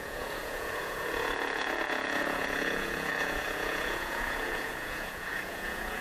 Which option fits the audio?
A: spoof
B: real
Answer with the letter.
A